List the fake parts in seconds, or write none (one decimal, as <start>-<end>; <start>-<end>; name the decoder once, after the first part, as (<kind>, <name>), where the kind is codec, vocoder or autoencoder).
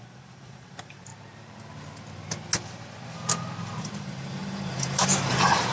0.0-1.1 (vocoder, BigVGAN v2); 3.8-5.7